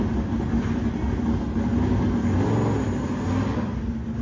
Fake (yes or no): no